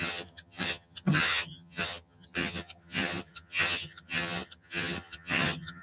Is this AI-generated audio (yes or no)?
yes